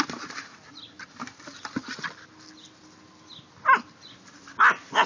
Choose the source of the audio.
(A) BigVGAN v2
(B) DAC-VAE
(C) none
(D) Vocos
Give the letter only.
C